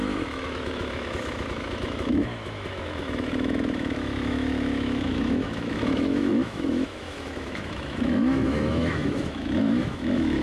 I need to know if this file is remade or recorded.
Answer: remade